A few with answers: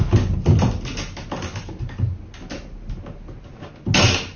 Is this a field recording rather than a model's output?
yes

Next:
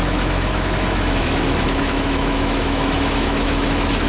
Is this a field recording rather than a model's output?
no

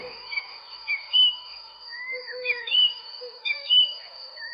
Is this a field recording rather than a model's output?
no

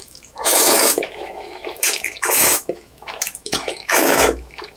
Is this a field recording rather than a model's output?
no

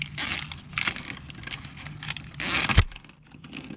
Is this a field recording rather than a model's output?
yes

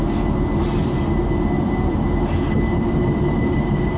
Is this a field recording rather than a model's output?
yes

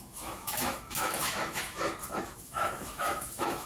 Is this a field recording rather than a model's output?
no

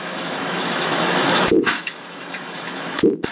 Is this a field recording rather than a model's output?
no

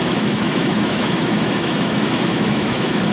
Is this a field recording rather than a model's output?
no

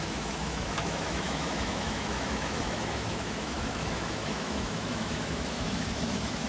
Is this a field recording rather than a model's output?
no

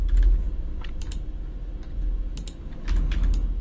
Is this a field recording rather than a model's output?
yes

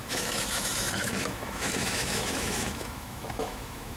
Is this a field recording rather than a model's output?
no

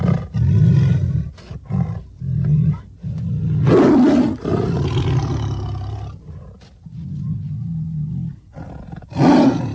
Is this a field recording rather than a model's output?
yes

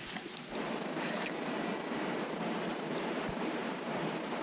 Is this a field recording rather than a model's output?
yes